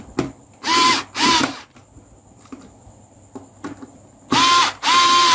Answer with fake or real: real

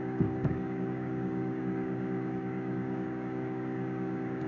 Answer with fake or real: fake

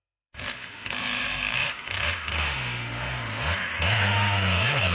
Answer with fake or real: fake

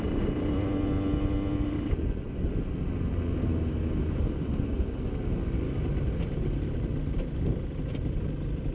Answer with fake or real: real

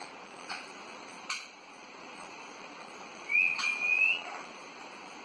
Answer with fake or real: fake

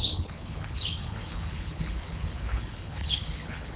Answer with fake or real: fake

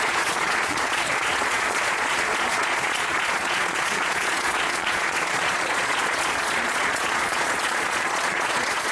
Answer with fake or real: fake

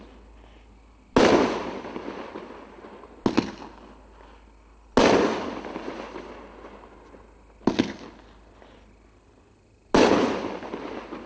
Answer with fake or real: real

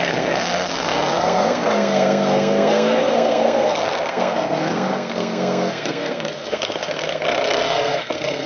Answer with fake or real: fake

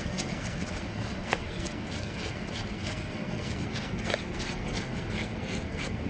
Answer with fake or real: fake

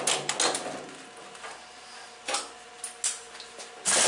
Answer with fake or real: real